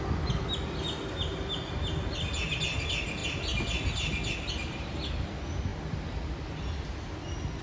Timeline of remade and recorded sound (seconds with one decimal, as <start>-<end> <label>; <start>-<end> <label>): 0.0-7.6 recorded